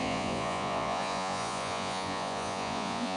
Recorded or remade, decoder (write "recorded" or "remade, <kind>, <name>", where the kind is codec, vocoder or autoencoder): remade, vocoder, Vocos